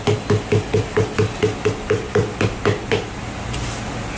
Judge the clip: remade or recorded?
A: recorded